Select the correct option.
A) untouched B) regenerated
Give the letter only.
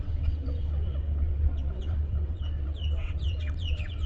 B